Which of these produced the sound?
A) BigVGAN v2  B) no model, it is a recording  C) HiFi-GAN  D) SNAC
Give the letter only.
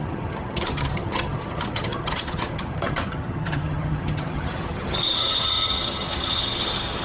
C